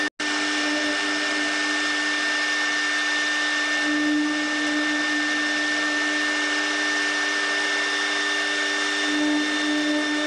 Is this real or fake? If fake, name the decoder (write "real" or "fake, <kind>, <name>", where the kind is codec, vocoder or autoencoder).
real